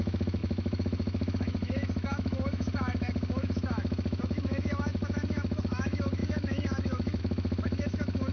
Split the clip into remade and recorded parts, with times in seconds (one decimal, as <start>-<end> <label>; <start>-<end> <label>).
0.0-8.3 remade